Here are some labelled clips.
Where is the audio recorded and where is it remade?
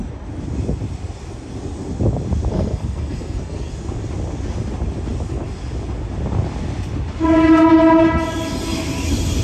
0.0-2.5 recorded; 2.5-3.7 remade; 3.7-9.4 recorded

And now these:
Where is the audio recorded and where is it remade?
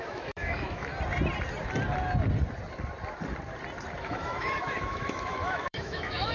0.0-0.9 remade; 0.9-4.0 recorded; 4.0-6.3 remade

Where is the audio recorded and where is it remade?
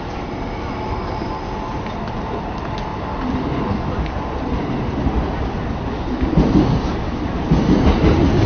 0.0-8.5 recorded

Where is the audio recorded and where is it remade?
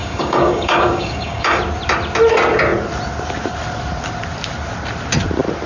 0.0-1.6 remade; 1.6-5.7 recorded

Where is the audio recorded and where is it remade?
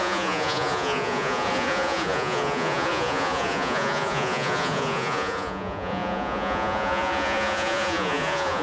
0.0-8.6 remade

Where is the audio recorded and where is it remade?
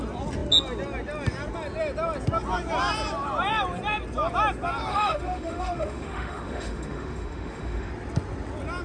0.0-4.9 recorded; 4.9-7.9 remade; 7.9-8.8 recorded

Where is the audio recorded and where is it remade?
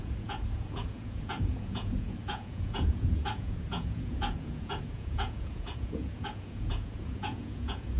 0.0-8.0 remade